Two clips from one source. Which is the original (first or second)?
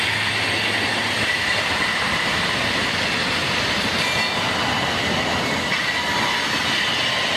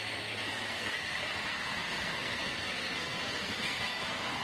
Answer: first